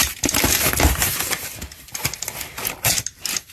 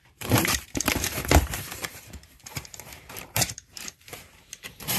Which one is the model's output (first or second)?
second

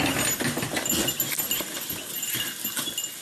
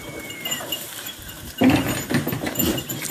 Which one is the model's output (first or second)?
second